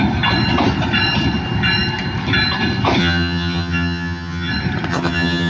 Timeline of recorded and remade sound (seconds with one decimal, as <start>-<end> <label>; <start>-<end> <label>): 0.0-3.0 recorded; 3.0-4.5 remade; 4.5-4.9 recorded; 4.9-5.5 remade